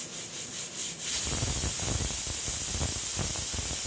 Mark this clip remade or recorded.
recorded